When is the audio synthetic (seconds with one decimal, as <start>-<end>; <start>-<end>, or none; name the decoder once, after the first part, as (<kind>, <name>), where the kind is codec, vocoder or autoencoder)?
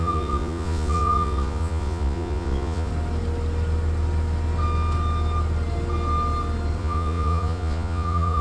0.0-2.9 (vocoder, Vocos); 6.8-8.4